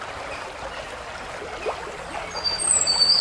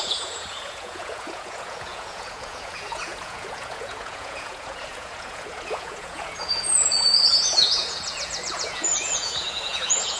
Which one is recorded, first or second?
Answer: first